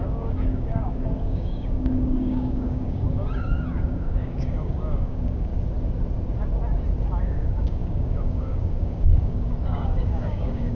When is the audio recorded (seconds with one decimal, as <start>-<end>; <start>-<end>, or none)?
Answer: 5.5-7.2

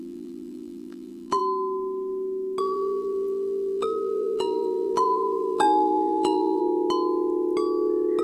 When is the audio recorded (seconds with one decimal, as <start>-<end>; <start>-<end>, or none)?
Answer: 1.4-2.6; 6.6-8.2